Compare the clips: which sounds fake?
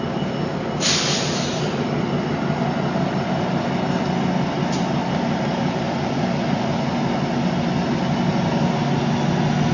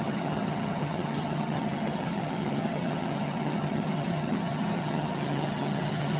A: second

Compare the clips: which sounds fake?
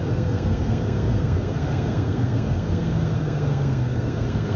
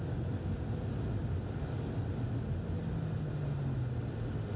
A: first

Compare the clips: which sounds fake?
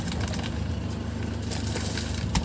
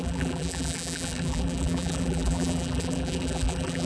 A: second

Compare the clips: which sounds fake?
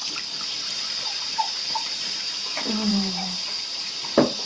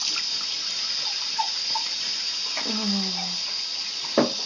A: first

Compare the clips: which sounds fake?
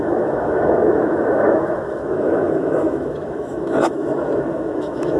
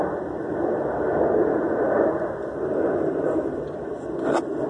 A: first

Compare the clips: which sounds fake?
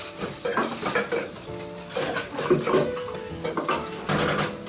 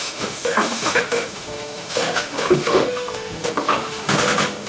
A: second